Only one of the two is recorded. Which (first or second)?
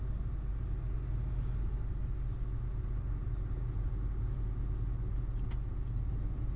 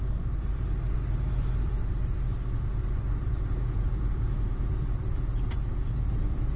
first